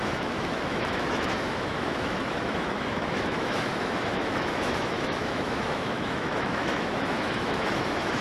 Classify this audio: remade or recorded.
remade